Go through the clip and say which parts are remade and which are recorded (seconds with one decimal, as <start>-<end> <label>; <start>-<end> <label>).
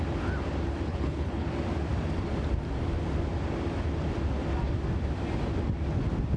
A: 0.0-0.9 recorded; 0.9-1.5 remade; 1.5-6.4 recorded